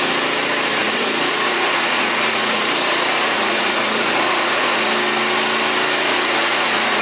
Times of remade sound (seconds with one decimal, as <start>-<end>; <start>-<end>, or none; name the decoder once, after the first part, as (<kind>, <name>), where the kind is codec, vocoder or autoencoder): 0.8-4.9 (vocoder, Vocos); 6.1-7.0